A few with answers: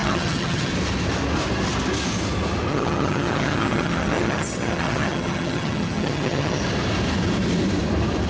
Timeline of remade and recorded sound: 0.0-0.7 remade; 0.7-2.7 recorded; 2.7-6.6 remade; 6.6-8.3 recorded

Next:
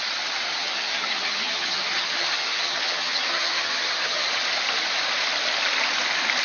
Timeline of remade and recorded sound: 0.0-0.6 recorded; 0.6-4.3 remade; 4.3-6.4 recorded

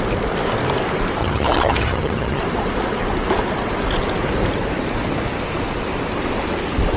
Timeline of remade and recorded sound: 0.0-1.2 recorded; 1.2-2.4 remade; 2.4-7.0 recorded

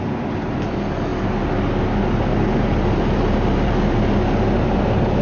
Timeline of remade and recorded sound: 0.0-5.2 recorded